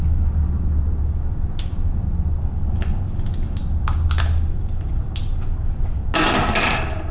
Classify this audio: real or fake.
real